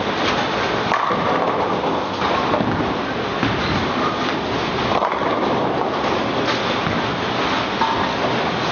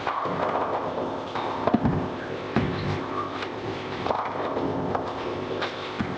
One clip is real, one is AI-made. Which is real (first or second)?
first